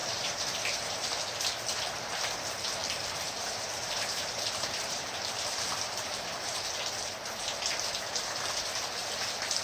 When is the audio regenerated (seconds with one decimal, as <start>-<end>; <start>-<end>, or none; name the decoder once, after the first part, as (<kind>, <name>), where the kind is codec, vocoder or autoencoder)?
0.0-1.2 (vocoder, BigVGAN v2); 2.8-6.6; 9.0-9.6